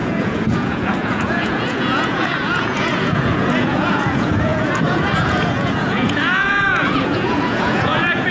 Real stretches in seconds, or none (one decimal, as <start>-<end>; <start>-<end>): none